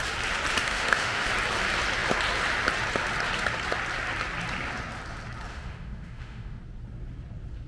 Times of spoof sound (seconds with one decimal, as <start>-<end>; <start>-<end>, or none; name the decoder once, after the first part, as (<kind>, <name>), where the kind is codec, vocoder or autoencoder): 0.6-1.3 (autoencoder, DAC-VAE); 5.5-6.6